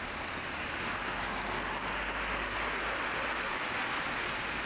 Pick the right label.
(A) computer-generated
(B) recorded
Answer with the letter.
B